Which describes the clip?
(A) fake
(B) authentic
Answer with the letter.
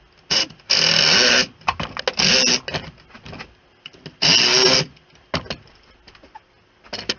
B